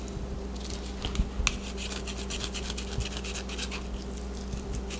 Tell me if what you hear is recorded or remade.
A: recorded